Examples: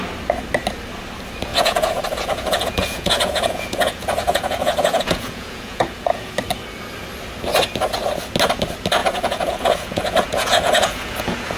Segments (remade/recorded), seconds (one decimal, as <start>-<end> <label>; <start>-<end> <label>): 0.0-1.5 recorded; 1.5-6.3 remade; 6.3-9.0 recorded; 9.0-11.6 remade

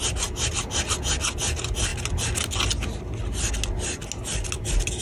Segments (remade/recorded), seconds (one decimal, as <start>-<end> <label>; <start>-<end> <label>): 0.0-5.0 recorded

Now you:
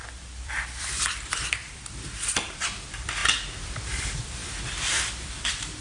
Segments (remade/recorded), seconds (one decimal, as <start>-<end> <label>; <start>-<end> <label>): 0.0-3.2 remade; 3.2-4.0 recorded; 4.0-5.8 remade